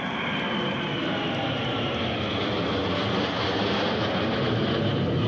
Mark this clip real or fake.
real